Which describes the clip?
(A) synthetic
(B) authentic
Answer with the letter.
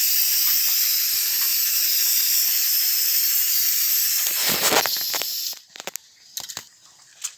B